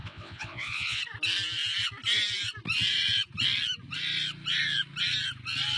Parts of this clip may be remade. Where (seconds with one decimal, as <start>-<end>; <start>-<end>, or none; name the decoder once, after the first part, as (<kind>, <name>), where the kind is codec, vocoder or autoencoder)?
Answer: 0.0-1.0 (vocoder, WaveNeXt)